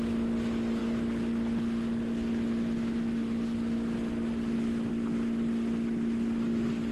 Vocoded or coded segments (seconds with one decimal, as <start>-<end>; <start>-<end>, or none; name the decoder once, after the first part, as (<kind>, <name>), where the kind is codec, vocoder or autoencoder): none